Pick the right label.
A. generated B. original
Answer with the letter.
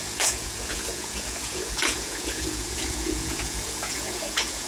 A